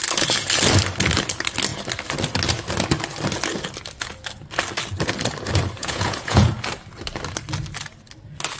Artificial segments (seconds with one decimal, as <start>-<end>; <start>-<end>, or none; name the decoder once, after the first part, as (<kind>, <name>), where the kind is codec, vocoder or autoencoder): 5.8-6.5 (vocoder, Vocos)